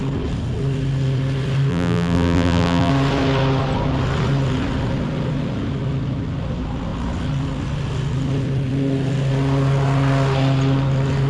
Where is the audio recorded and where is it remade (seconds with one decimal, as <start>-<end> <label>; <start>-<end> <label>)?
0.0-1.7 recorded; 1.7-2.9 remade; 2.9-11.3 recorded